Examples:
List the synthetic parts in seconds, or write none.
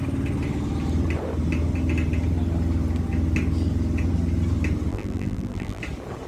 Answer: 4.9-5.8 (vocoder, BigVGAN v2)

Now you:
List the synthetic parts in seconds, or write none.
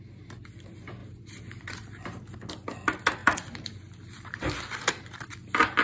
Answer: 1.0-2.5 (vocoder, BigVGAN v2)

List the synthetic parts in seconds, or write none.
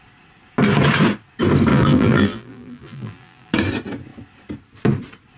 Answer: 1.7-3.5 (vocoder, BigVGAN v2)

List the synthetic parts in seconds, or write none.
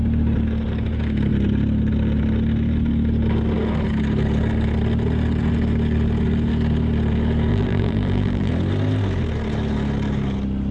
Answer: 7.5-8.5 (vocoder, BigVGAN v2)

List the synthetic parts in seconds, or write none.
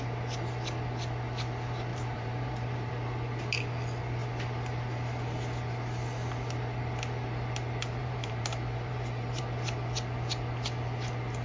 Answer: 1.9-2.9 (vocoder, BigVGAN v2); 8.0-9.4